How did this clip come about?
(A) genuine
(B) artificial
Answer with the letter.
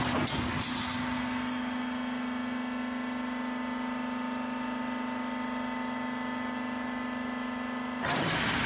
A